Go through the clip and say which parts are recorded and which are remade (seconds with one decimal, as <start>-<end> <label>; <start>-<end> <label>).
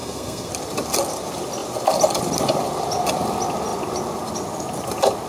0.0-0.5 remade; 0.5-5.3 recorded